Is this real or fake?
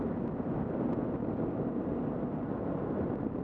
real